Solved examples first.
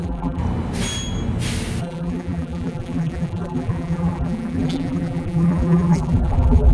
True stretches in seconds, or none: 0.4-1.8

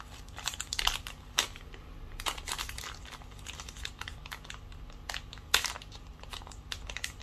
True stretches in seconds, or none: 4.2-5.3

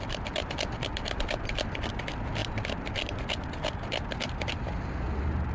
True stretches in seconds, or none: 0.0-5.5

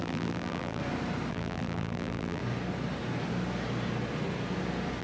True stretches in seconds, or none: 0.8-1.3; 2.4-5.0